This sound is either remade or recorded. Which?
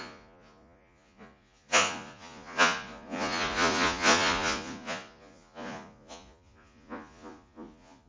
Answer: remade